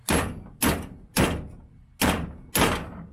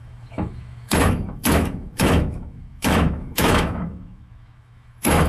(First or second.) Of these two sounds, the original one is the first